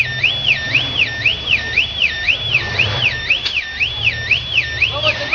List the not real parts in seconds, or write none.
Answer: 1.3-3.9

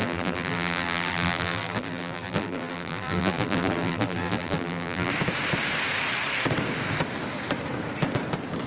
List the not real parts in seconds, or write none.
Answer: 0.0-5.1

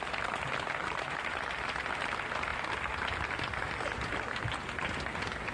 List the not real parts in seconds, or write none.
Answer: 0.8-1.8

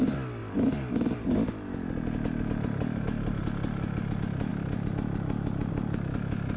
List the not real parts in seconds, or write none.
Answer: none

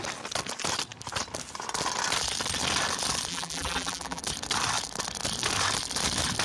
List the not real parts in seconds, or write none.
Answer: 3.3-4.2

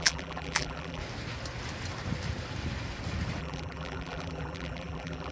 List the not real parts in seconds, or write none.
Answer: 0.0-1.0; 3.4-5.3

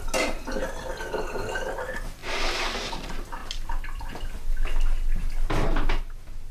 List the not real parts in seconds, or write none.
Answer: none

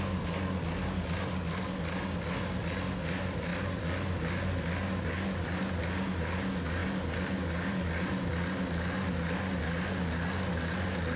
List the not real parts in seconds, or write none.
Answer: none